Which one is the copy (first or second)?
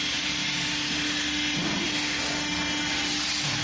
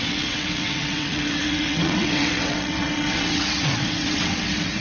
second